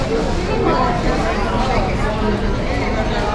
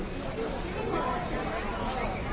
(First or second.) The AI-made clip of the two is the second